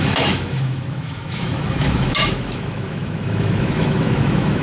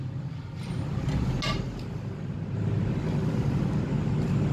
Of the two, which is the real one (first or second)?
second